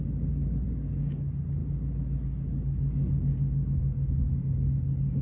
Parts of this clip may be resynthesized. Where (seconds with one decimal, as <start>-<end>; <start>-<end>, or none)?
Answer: none